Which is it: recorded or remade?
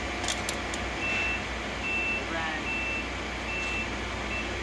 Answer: recorded